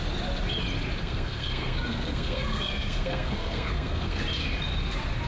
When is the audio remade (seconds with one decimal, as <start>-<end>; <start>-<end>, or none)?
1.0-4.2